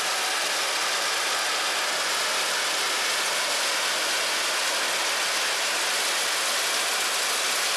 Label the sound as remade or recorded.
recorded